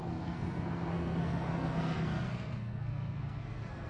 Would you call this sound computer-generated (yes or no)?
yes